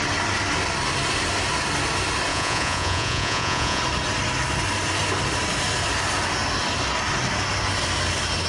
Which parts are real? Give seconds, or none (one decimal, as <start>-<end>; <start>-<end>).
0.0-2.3; 3.8-8.5

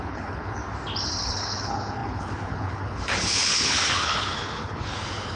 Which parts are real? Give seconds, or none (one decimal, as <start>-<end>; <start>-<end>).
0.6-1.2

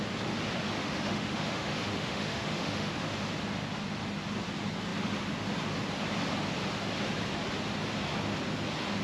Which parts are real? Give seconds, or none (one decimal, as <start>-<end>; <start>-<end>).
0.0-0.8; 2.9-9.0

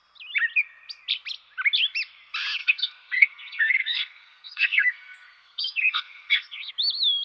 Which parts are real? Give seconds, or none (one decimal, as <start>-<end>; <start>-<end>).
0.0-2.6; 6.7-7.2